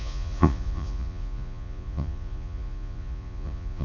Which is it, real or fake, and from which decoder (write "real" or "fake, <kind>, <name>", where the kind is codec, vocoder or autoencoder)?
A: fake, vocoder, Vocos